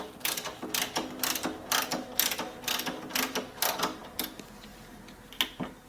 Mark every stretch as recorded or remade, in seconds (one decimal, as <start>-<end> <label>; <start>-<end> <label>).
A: 0.0-5.9 recorded